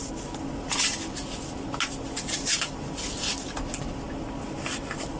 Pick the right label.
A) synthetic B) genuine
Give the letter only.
B